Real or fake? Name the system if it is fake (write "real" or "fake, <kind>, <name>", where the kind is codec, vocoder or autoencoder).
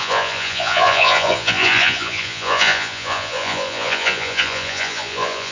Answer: fake, vocoder, Vocos